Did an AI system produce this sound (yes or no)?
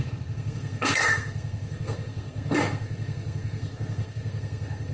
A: yes